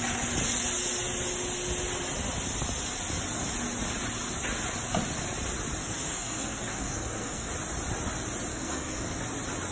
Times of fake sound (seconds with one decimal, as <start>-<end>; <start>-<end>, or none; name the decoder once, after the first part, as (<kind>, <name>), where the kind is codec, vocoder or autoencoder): 5.8-7.5 (codec, SNAC); 8.5-9.2

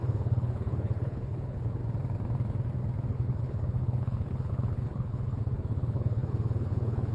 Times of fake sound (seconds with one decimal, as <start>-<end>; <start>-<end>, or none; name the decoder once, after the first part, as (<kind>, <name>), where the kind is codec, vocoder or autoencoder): 0.0-1.8 (codec, HILCodec); 3.1-7.1

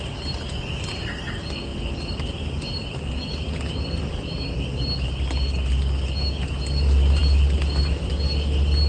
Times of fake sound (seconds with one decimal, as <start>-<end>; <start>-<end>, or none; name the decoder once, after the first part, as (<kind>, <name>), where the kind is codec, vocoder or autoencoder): none

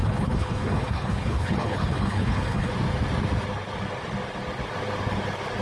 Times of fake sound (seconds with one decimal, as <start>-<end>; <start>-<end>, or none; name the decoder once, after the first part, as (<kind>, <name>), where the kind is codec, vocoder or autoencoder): 0.0-2.7 (codec, HILCodec)